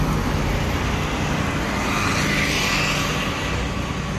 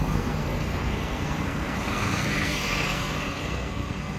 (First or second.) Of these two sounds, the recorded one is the first